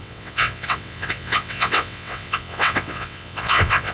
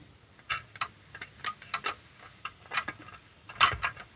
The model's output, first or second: first